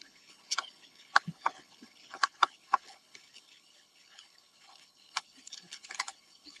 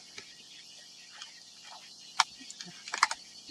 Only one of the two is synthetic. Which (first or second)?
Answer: first